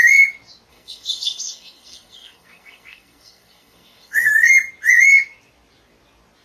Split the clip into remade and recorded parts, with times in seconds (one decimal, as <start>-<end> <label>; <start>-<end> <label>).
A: 0.0-0.7 recorded; 0.7-4.5 remade; 4.5-6.4 recorded